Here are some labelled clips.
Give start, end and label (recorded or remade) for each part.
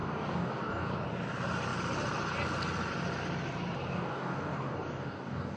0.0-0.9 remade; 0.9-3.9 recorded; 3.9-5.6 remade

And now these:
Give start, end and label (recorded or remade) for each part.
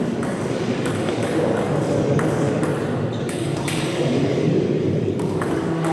0.0-2.7 remade; 2.7-3.2 recorded; 3.2-5.9 remade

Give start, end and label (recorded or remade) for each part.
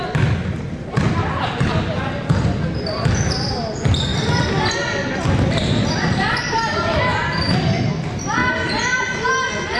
0.0-9.8 recorded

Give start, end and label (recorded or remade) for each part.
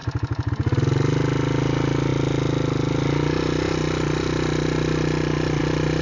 0.0-6.0 recorded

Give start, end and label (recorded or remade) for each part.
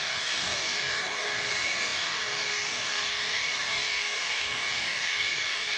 0.0-5.8 remade